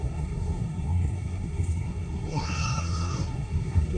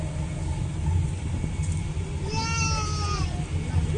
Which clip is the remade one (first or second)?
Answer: first